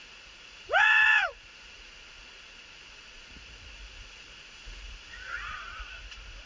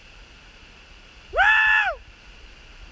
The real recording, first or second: second